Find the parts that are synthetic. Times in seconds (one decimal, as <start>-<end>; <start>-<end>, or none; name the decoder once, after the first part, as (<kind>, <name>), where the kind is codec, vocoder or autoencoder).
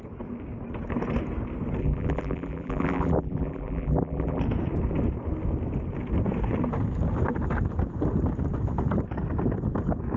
1.8-4.4 (vocoder, BigVGAN v2)